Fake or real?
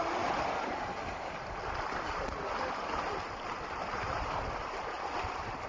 real